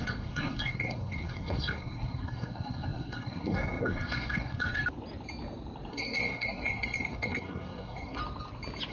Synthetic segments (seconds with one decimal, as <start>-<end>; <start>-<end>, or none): 0.0-4.8; 5.9-8.2